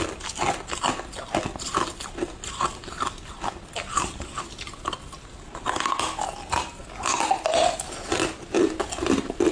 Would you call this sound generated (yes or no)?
no